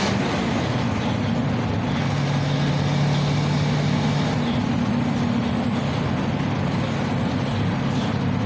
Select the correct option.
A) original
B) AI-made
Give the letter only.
A